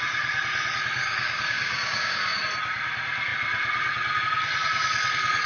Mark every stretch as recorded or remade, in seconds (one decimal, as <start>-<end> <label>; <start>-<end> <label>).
0.0-1.0 recorded; 1.0-2.4 remade; 2.4-5.5 recorded